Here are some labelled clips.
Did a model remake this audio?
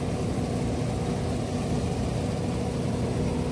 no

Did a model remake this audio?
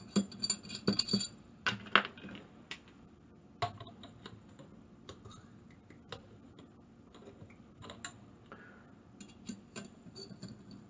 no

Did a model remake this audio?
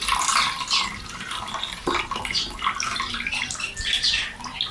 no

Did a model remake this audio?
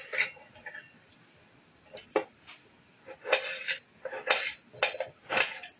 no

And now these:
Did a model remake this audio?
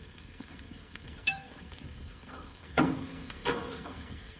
yes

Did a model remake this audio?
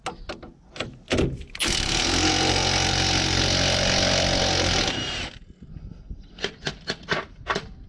no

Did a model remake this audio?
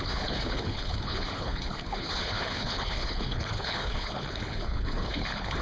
yes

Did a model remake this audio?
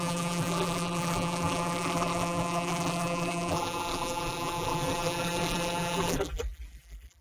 yes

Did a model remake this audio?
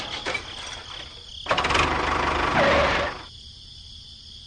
no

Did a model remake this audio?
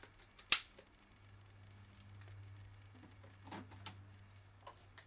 no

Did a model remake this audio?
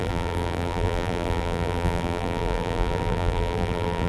yes